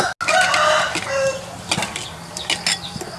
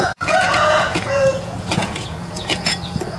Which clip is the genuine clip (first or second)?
first